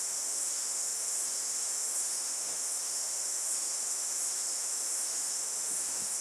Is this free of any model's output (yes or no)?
no